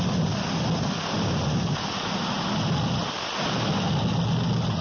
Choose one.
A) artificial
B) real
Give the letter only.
B